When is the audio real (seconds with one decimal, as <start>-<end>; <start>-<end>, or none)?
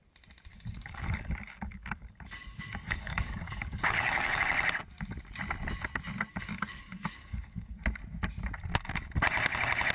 0.0-0.5; 4.4-6.3; 7.8-9.9